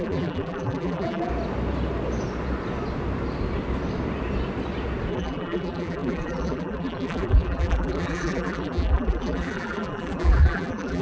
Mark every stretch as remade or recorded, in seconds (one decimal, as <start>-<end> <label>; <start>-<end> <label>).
0.0-1.3 remade; 1.3-5.1 recorded; 5.1-11.0 remade